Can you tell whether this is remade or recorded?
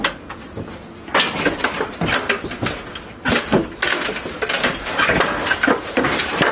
recorded